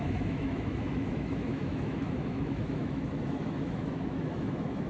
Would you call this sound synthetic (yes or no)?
yes